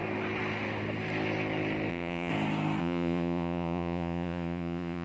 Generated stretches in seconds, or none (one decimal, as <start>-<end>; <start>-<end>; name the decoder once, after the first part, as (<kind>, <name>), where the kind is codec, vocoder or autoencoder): 1.9-2.3 (vocoder, Vocos); 2.8-5.0